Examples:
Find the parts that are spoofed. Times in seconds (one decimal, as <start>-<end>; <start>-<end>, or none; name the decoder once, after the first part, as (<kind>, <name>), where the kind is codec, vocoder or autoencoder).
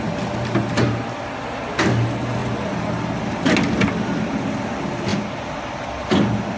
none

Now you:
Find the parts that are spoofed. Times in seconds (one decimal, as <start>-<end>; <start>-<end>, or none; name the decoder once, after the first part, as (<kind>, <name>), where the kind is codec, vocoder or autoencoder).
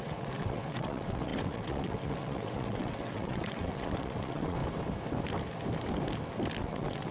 0.0-4.6 (vocoder, WaveNeXt); 6.6-7.1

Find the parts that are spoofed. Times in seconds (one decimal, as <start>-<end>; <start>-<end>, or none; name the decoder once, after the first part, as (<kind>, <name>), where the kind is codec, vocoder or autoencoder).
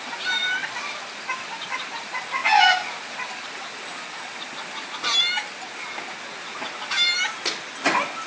none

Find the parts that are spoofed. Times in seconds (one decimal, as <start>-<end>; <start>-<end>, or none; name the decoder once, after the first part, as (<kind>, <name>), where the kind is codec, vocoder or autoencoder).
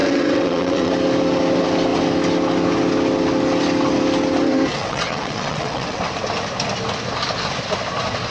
0.0-0.9 (vocoder, WaveNeXt); 4.7-6.0